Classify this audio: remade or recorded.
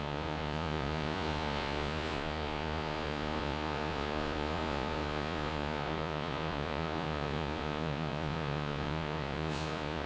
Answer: remade